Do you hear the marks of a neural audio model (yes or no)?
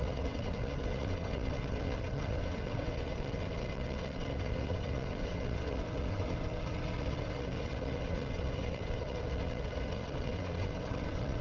yes